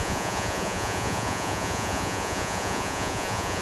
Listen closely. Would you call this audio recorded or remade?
remade